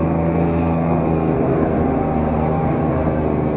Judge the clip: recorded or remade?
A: remade